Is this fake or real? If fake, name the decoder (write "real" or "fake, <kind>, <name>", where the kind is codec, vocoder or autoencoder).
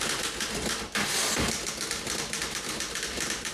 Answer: real